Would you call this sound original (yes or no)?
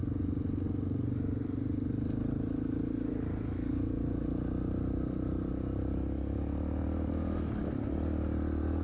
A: yes